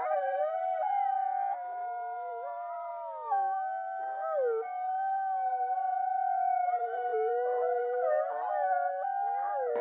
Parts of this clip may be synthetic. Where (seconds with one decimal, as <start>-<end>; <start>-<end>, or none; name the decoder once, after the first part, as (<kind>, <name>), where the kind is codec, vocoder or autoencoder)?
0.0-2.9 (vocoder, BigVGAN v2); 5.8-8.5

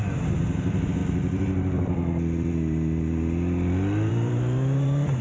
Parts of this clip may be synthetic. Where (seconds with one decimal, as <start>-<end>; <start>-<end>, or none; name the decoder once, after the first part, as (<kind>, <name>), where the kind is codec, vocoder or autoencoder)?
0.0-1.0 (vocoder, BigVGAN v2); 4.1-5.2

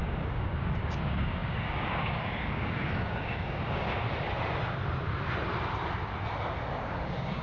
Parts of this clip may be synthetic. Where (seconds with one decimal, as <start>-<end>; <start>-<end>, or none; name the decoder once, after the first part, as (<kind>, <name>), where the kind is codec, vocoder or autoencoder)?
0.0-4.0 (codec, DAC); 6.7-7.4

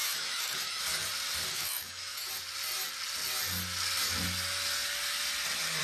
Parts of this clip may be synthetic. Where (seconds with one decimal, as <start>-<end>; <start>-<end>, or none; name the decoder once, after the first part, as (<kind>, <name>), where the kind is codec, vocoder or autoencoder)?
0.0-0.8 (autoencoder, DAC-VAE); 1.5-2.3

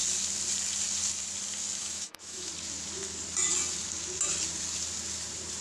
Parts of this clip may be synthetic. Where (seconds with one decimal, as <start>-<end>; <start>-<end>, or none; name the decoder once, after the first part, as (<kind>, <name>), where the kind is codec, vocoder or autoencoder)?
1.8-2.5 (autoencoder, DAC-VAE)

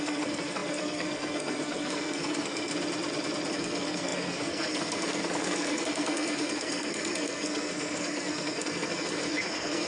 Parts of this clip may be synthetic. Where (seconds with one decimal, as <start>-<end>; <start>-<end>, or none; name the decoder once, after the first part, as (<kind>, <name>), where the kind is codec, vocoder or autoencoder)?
0.0-2.7 (codec, SNAC); 3.5-9.9

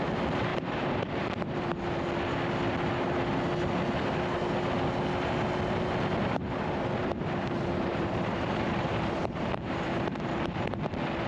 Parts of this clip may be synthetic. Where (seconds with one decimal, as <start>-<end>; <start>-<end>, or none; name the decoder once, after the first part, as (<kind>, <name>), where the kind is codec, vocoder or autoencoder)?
0.5-1.7 (vocoder, BigVGAN v2); 7.0-10.9

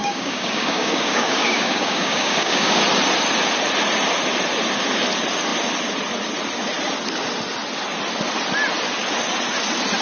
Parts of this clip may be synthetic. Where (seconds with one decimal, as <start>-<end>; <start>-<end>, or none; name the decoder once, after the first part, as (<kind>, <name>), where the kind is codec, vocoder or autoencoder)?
0.0-2.8 (codec, DAC)